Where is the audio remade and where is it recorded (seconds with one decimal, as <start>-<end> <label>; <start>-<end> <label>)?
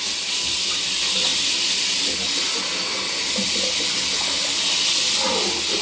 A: 0.0-5.8 recorded